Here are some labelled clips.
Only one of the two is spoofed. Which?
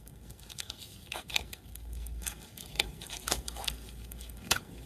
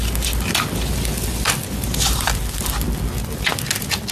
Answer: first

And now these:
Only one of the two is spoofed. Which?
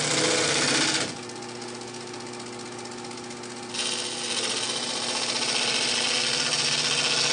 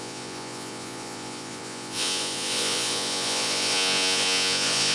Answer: second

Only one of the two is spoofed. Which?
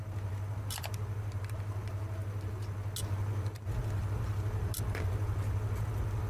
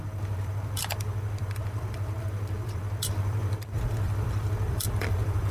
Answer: second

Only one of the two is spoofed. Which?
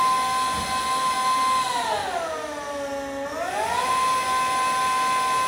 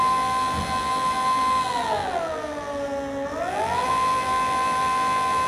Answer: second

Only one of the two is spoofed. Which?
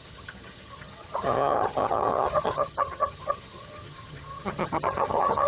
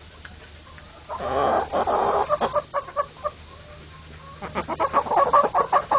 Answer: first